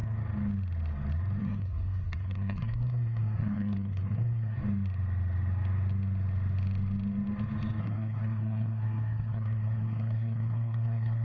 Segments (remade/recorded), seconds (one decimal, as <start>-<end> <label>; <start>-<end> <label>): 0.0-1.4 recorded; 1.4-4.6 remade; 4.6-7.8 recorded; 7.8-11.2 remade